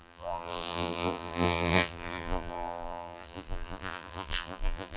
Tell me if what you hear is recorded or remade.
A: remade